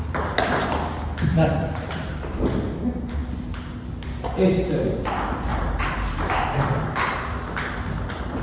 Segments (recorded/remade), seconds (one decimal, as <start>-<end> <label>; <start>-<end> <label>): 0.0-1.3 recorded; 1.3-2.4 remade; 2.4-5.5 recorded; 5.5-6.7 remade; 6.7-8.4 recorded

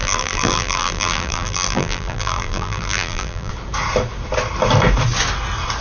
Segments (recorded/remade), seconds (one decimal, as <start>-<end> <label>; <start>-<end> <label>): 0.0-3.5 remade; 3.5-5.8 recorded

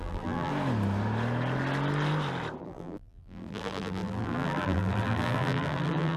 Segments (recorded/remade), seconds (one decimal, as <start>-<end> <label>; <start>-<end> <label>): 0.0-0.5 remade; 0.5-2.6 recorded; 2.6-6.2 remade

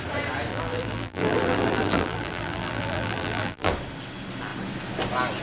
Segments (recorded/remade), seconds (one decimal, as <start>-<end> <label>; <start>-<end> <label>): 0.0-0.5 recorded; 0.5-3.7 remade; 3.7-5.4 recorded

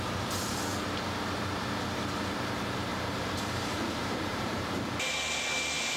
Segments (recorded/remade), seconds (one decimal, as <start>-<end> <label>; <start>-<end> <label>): 0.0-2.9 recorded; 2.9-4.7 remade; 4.7-6.0 recorded